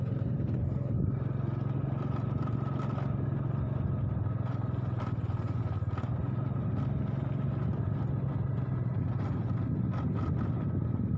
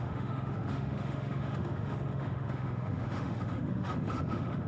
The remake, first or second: second